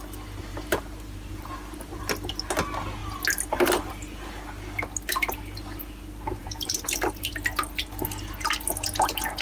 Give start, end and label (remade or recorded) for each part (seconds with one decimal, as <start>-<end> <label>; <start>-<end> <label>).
0.0-0.5 recorded; 0.5-1.9 remade; 1.9-6.4 recorded; 6.4-7.3 remade; 7.3-9.4 recorded